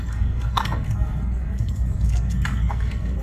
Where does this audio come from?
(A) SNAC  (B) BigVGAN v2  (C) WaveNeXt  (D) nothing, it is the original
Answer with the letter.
A